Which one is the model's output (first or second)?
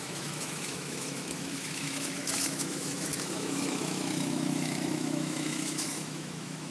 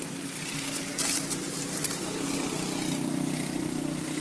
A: first